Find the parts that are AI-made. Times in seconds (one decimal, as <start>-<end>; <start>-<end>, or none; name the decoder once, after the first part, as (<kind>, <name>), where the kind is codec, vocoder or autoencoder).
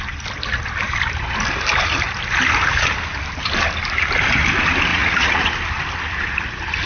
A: 4.9-5.5 (vocoder, Vocos)